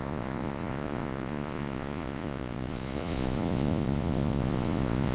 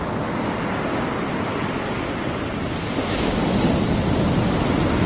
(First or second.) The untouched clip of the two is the second